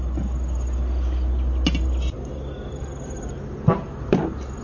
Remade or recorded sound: recorded